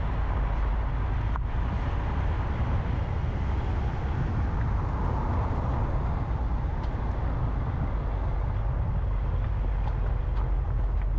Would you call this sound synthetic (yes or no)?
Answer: no